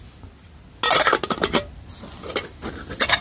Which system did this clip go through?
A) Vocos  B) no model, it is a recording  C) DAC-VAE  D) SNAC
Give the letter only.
B